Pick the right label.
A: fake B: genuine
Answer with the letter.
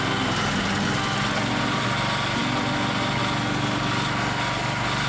B